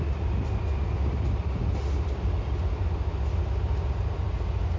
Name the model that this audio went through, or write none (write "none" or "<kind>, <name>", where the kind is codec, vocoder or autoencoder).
none